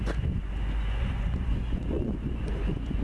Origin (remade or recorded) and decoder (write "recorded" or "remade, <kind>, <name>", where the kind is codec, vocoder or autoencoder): remade, vocoder, Vocos